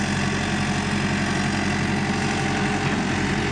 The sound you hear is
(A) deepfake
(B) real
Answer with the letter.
B